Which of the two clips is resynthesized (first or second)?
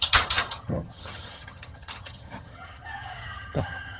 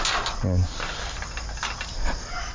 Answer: first